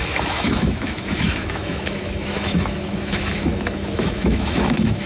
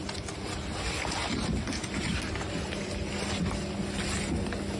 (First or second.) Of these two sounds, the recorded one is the second